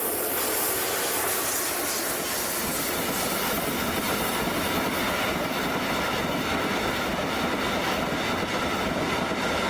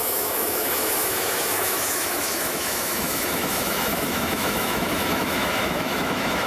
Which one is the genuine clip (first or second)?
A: first